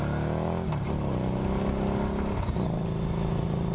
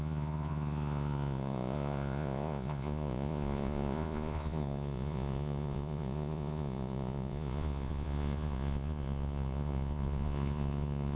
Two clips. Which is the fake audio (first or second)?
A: second